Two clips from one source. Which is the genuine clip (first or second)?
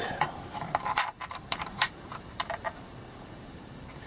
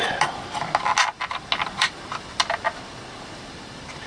second